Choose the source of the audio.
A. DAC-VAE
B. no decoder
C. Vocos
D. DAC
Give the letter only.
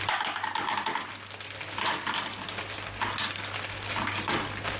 B